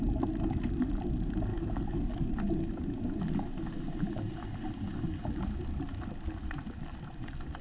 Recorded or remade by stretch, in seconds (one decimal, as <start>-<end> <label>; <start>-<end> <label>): 0.0-1.5 recorded; 1.5-2.3 remade; 2.3-7.6 recorded